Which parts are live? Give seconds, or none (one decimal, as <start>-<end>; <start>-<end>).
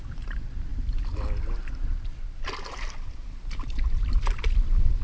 0.0-5.0